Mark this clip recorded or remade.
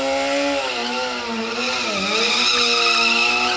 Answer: recorded